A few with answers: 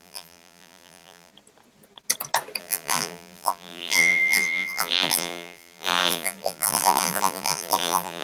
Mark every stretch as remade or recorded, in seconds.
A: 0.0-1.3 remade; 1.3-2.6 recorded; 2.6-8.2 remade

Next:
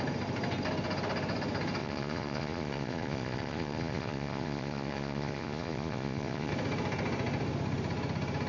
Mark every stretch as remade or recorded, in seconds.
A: 0.0-1.8 recorded; 1.8-6.5 remade; 6.5-8.5 recorded

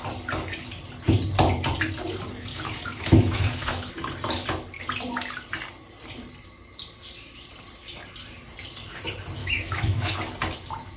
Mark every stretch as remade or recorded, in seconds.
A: 0.0-2.5 recorded; 2.5-3.9 remade; 3.9-9.4 recorded; 9.4-10.1 remade; 10.1-11.0 recorded

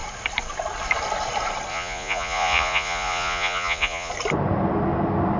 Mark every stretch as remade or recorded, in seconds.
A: 0.0-1.7 recorded; 1.7-4.1 remade; 4.1-5.4 recorded

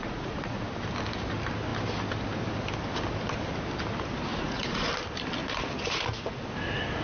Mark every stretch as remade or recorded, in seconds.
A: 0.0-0.7 remade; 0.7-4.3 recorded; 4.3-4.9 remade; 4.9-7.0 recorded

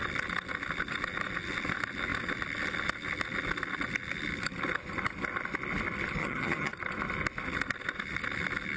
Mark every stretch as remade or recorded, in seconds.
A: 0.0-6.2 recorded; 6.2-6.7 remade; 6.7-8.8 recorded

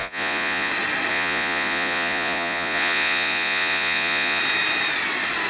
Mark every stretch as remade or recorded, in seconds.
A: 0.0-0.7 remade; 0.7-1.1 recorded; 1.1-4.4 remade; 4.4-5.5 recorded